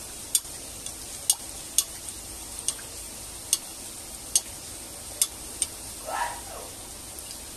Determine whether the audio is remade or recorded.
recorded